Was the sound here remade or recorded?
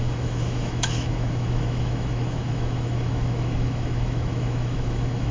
remade